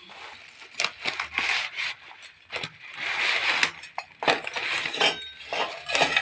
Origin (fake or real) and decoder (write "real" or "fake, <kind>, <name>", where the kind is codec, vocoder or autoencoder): real